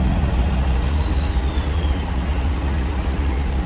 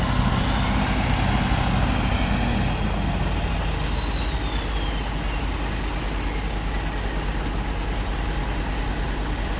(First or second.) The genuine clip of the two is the second